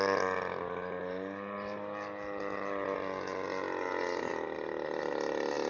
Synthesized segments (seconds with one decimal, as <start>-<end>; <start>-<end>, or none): none